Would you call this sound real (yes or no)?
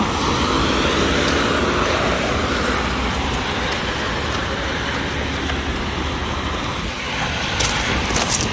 yes